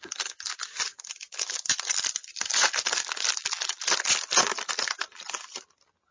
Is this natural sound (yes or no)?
yes